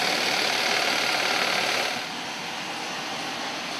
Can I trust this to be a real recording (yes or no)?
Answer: yes